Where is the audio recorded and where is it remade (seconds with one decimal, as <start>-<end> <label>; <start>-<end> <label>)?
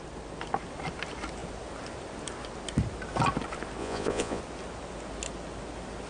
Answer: 0.0-3.8 recorded; 3.8-4.4 remade; 4.4-6.1 recorded